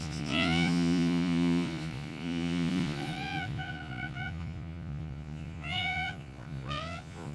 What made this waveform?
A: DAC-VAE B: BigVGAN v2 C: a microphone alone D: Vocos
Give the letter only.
D